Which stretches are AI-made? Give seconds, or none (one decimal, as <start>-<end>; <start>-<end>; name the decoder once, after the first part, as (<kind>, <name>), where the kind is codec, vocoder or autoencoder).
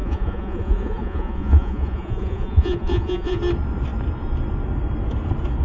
0.0-3.4 (vocoder, Vocos)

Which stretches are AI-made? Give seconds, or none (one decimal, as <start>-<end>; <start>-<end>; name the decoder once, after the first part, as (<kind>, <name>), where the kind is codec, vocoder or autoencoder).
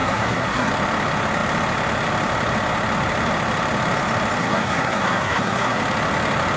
0.0-0.7 (codec, SNAC); 4.4-5.8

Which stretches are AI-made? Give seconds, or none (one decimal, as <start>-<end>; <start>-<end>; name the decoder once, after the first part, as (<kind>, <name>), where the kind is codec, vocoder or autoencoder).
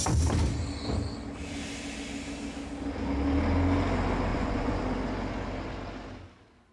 4.3-4.8 (vocoder, Vocos)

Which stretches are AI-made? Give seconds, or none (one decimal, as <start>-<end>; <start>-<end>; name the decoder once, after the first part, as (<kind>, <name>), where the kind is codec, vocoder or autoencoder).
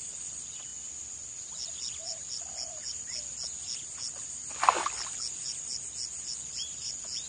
none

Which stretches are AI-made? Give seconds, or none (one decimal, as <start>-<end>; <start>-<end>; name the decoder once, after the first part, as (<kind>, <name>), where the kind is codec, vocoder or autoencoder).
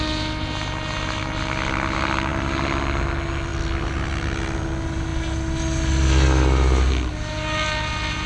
none